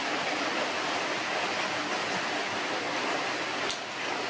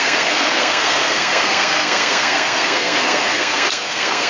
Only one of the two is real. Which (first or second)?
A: first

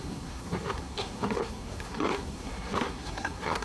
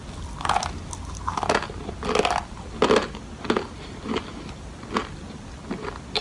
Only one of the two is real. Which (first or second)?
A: second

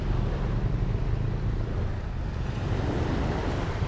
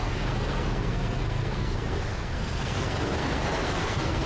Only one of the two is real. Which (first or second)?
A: first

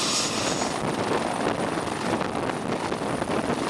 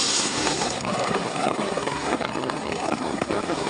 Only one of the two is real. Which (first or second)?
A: first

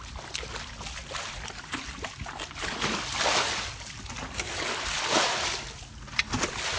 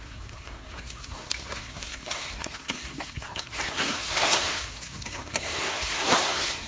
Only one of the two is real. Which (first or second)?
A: first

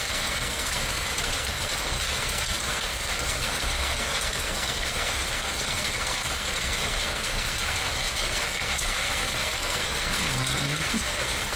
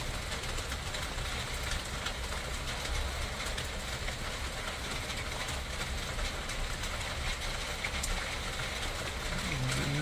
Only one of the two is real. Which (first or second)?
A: second